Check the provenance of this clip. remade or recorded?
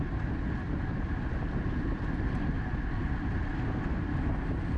recorded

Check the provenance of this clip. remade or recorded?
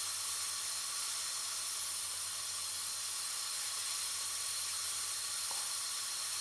recorded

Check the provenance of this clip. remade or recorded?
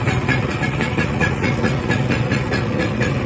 remade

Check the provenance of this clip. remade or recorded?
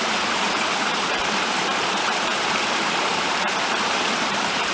remade